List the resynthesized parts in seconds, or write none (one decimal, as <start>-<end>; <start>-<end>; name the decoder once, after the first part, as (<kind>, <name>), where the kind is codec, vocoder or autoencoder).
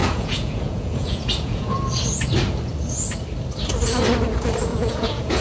0.0-1.8 (vocoder, Vocos); 4.7-5.4